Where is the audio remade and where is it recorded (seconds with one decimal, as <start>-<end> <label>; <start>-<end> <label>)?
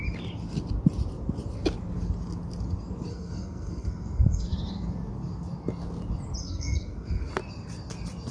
0.0-3.1 recorded; 3.1-4.5 remade; 4.5-6.4 recorded; 6.4-7.3 remade; 7.3-8.3 recorded